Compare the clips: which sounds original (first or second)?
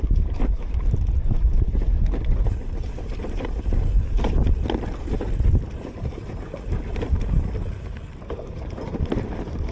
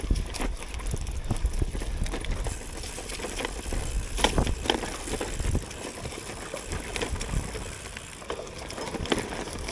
second